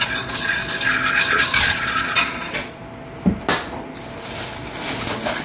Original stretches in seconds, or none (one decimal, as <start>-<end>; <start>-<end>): 0.6-1.3; 2.8-5.4